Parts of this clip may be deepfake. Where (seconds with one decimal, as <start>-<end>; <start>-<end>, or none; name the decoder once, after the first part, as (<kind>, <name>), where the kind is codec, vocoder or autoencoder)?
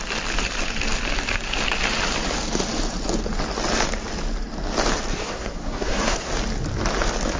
5.1-6.3 (codec, SNAC)